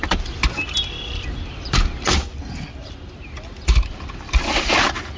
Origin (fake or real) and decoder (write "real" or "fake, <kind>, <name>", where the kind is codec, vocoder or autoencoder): real